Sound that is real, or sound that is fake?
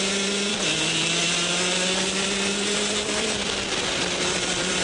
fake